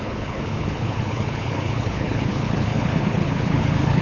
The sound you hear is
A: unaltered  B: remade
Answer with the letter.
B